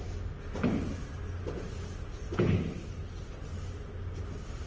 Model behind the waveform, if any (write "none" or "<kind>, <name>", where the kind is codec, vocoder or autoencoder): none